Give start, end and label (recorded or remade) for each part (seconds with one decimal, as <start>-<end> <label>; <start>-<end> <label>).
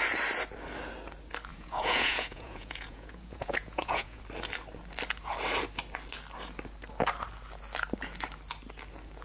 0.0-1.5 recorded; 1.5-4.2 remade; 4.2-9.2 recorded